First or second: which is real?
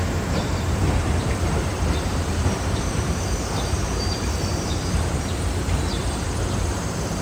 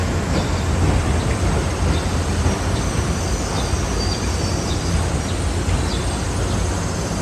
second